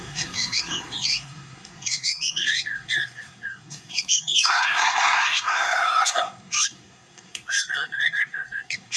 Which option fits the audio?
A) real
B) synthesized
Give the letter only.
B